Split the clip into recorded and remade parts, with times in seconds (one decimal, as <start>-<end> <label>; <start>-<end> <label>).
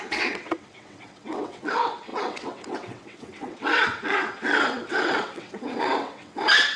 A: 0.0-6.8 remade